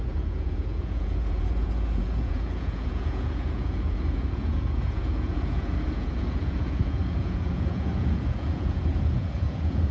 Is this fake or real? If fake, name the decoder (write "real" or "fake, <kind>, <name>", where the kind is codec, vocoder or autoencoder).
fake, vocoder, Vocos